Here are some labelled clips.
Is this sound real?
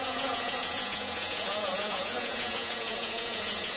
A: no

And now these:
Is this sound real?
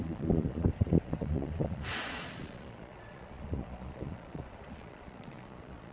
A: no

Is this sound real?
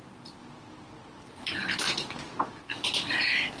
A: yes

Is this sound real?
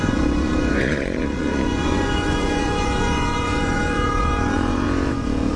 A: no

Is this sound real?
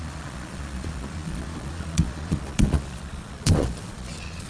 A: no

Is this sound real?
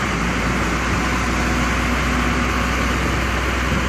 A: yes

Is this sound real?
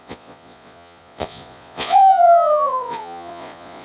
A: no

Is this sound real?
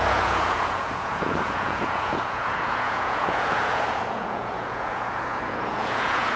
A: no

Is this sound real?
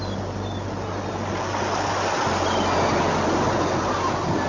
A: yes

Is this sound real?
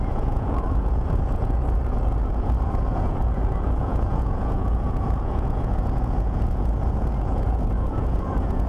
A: no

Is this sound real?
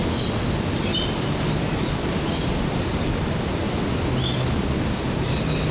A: yes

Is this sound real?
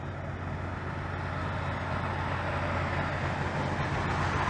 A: yes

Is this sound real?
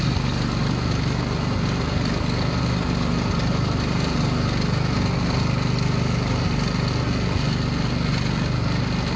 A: yes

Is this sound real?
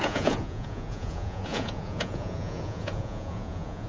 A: no